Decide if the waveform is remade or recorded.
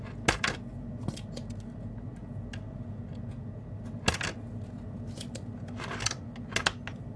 recorded